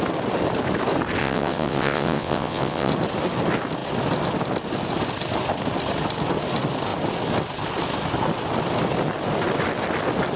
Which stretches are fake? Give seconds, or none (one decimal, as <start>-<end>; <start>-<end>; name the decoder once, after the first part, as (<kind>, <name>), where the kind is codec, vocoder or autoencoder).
1.2-2.9 (vocoder, WaveNeXt)